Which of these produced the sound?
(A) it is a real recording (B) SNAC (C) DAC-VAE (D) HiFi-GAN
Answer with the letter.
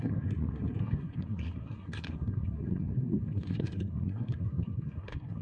B